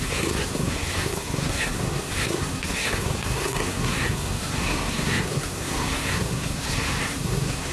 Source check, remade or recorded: remade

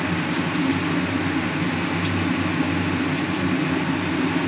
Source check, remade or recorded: recorded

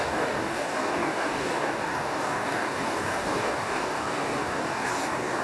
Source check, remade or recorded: remade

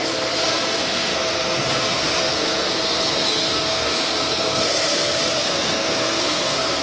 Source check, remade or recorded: remade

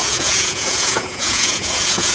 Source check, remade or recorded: remade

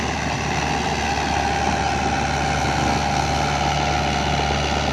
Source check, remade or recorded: recorded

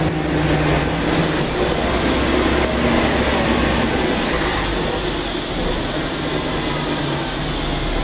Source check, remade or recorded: recorded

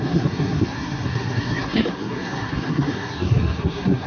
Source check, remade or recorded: remade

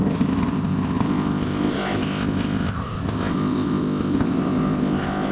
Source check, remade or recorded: remade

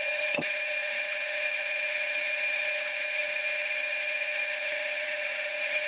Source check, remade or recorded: remade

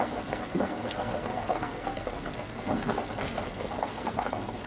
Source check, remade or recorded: remade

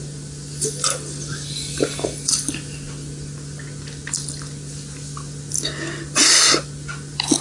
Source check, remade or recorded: recorded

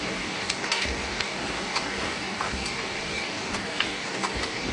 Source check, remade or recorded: remade